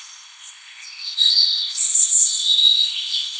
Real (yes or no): no